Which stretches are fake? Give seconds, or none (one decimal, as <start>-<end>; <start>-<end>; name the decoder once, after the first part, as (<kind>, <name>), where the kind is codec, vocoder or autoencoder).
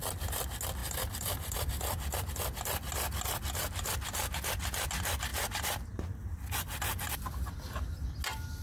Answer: 0.8-2.3 (vocoder, BigVGAN v2); 5.3-5.9